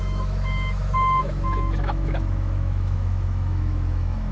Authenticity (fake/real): fake